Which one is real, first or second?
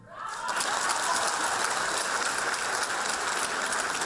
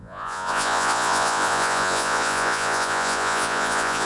first